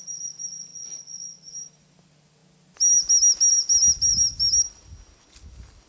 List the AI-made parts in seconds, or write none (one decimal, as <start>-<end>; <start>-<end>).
0.7-1.5